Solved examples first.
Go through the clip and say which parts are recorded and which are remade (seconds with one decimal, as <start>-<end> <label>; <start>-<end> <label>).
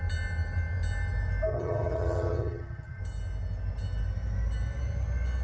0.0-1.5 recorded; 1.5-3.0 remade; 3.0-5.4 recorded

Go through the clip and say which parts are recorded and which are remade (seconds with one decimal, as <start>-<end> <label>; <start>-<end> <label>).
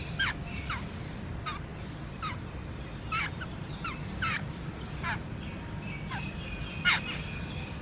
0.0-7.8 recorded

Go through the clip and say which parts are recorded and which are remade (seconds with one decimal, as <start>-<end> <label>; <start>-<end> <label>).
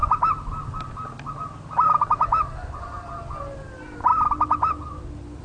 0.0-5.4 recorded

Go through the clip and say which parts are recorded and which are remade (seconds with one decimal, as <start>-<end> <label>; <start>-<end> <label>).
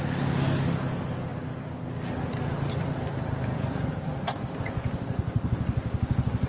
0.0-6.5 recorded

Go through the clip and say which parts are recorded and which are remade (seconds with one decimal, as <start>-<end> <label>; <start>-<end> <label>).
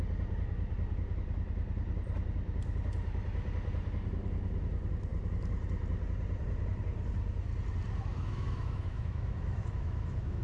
0.0-8.1 recorded; 8.1-10.4 remade